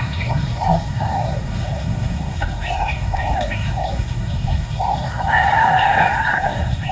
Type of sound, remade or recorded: remade